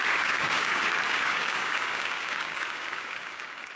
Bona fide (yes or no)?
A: no